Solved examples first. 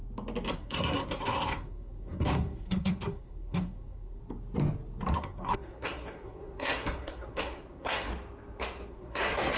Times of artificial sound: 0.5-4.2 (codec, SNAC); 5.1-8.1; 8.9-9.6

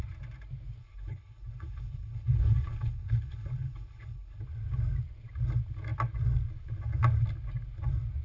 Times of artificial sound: 0.8-4.4 (codec, HILCodec)